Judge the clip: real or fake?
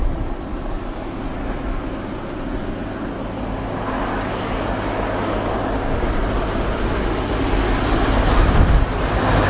real